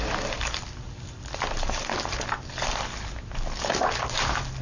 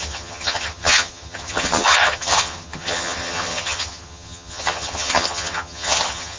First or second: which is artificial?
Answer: second